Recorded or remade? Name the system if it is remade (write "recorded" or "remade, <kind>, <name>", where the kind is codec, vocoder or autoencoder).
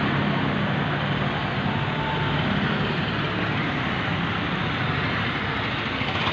recorded